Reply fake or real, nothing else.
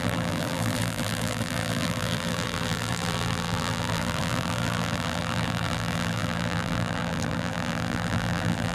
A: fake